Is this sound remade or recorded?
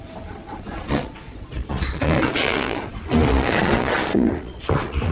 remade